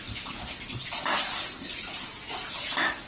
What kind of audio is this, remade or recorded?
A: recorded